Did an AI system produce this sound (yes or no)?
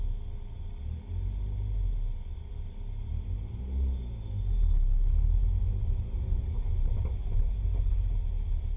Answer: no